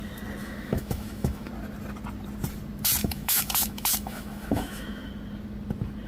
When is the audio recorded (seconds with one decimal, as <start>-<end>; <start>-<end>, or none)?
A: 0.0-0.4; 1.5-3.0; 5.1-6.1